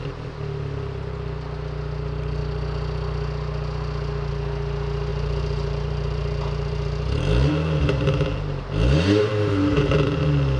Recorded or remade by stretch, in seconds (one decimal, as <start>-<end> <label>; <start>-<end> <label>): 0.0-5.1 recorded; 5.1-10.2 remade; 10.2-10.6 recorded